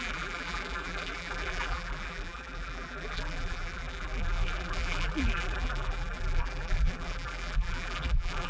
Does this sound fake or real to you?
fake